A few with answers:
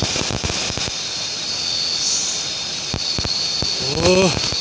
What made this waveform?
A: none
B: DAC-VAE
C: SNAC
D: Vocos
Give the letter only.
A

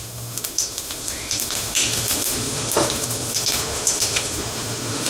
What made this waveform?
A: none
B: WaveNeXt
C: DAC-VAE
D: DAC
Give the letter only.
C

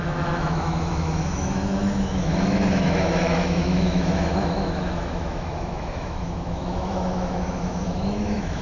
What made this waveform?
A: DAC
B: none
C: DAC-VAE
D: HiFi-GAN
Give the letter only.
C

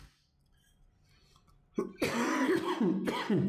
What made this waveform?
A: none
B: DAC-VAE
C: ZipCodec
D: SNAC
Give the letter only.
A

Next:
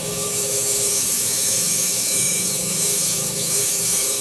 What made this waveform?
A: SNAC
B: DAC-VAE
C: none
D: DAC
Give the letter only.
B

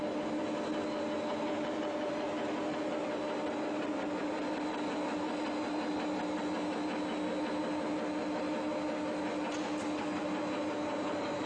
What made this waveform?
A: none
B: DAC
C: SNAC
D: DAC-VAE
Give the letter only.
A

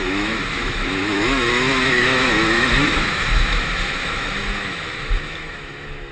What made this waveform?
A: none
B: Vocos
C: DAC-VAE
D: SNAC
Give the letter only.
C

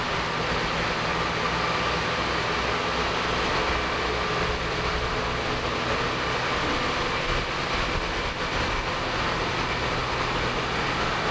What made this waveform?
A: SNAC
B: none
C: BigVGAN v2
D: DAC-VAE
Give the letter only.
B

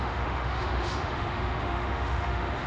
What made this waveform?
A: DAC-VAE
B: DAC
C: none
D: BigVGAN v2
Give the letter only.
A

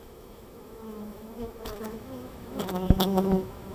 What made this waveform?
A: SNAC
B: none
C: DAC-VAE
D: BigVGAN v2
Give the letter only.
C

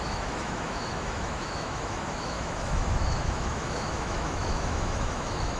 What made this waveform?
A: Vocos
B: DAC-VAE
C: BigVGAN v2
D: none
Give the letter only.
B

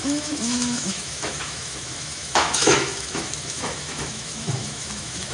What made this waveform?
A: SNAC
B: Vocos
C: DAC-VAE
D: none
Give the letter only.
C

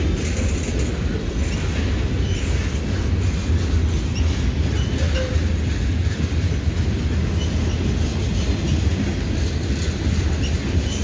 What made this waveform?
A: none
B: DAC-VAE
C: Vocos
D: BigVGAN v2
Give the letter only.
A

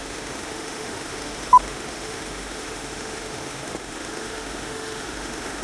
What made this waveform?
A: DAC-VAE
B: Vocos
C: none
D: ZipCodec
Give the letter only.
A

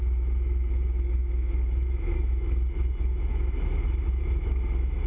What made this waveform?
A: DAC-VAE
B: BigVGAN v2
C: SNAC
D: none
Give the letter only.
A